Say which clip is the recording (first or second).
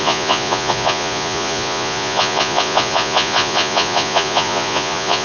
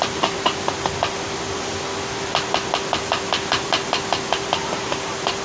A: second